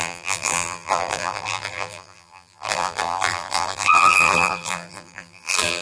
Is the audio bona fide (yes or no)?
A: no